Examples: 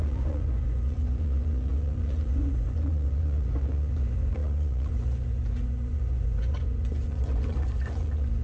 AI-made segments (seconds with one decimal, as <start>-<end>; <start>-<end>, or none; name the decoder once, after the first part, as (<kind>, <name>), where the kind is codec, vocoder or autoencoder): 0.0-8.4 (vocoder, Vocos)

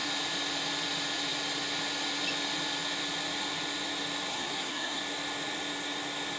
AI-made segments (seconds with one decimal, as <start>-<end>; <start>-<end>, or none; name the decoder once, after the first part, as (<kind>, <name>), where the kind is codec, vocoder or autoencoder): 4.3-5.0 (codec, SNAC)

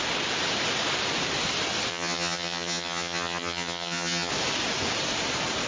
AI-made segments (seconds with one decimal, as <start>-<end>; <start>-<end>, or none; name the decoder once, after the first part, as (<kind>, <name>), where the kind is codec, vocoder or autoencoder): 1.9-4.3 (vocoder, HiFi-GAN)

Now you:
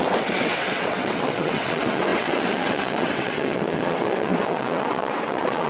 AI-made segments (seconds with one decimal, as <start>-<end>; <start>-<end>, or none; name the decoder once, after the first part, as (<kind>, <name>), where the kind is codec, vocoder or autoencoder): 0.0-5.7 (vocoder, WaveNeXt)

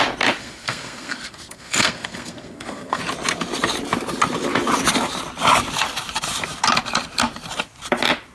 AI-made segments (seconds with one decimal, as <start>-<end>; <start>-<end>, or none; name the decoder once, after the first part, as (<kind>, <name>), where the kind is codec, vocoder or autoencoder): 0.4-3.0 (codec, SNAC)

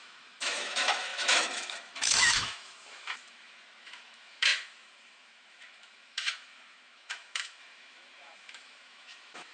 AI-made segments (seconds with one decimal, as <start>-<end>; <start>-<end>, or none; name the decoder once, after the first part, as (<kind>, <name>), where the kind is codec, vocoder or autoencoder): 0.0-9.5 (autoencoder, DAC-VAE)

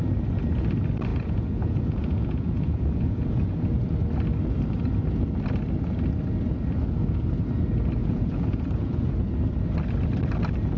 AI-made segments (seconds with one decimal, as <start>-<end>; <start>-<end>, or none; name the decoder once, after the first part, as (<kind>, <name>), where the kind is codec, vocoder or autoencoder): 1.1-3.6 (vocoder, Vocos); 8.0-9.1